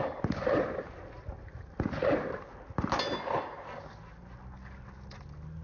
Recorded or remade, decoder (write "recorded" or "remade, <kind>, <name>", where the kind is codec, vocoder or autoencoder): recorded